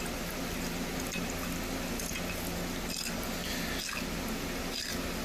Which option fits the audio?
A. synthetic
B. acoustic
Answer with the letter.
B